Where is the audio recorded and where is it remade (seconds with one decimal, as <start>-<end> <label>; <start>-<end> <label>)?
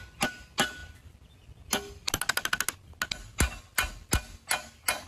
0.0-5.1 recorded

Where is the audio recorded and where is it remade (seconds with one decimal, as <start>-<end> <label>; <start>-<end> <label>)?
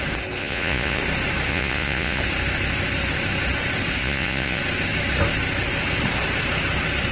0.0-0.4 recorded; 0.4-1.0 remade; 1.0-1.5 recorded; 1.5-2.2 remade; 2.2-4.0 recorded; 4.0-4.6 remade; 4.6-7.1 recorded